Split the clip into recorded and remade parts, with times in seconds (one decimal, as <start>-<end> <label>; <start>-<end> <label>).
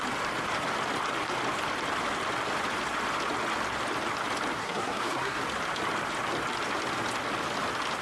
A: 0.0-4.6 recorded; 4.6-5.4 remade; 5.4-8.0 recorded